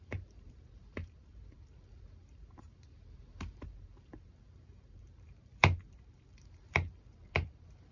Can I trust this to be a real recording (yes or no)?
no